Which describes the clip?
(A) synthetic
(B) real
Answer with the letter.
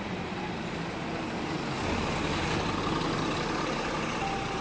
B